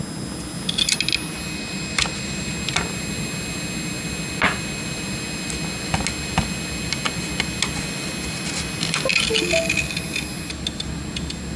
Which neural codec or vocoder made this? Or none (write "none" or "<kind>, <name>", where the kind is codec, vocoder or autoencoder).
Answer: none